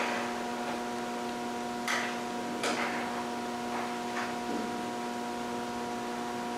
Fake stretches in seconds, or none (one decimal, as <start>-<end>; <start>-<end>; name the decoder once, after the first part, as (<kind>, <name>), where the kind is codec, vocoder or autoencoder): none